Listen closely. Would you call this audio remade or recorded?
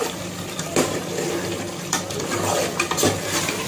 remade